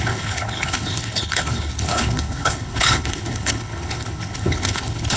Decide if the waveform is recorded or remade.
remade